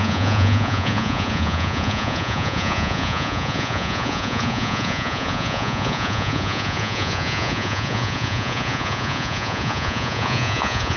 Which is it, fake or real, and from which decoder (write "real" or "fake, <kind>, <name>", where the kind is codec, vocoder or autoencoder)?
fake, vocoder, Vocos